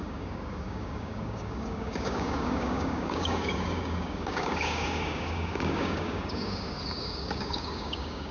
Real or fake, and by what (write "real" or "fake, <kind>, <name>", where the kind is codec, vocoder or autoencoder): fake, codec, DAC